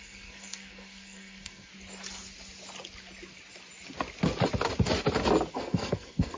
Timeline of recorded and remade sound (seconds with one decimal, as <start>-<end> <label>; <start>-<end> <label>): 0.0-1.7 remade; 1.7-5.5 recorded; 5.5-6.4 remade